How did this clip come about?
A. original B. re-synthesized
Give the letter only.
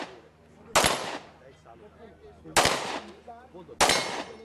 A